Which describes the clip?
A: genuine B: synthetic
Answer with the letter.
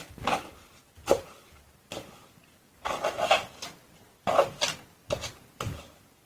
A